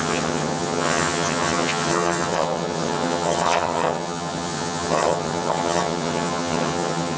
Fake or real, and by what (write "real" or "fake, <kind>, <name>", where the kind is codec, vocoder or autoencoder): fake, vocoder, HiFi-GAN